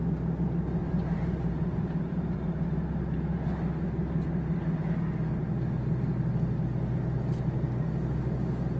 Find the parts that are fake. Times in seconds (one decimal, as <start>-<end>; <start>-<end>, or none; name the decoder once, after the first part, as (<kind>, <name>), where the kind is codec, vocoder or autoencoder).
0.8-2.4 (vocoder, BigVGAN v2)